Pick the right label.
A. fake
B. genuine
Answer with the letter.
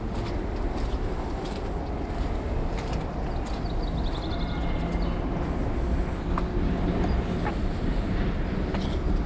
B